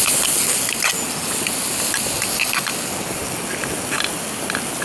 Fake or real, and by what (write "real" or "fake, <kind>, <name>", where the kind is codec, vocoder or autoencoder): real